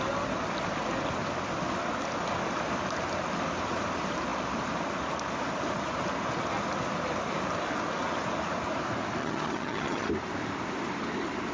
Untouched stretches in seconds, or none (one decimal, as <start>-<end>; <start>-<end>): 0.0-9.2; 10.1-11.5